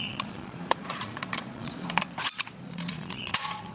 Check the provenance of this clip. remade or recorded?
remade